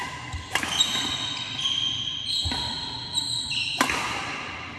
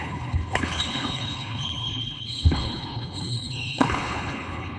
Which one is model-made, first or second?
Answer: second